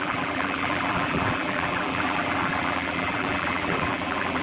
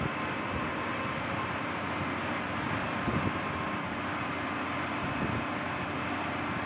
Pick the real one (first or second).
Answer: second